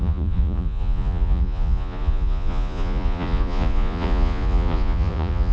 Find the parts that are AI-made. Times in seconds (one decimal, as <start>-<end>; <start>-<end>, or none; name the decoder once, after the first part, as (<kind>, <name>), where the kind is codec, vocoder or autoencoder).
0.0-5.5 (vocoder, Vocos)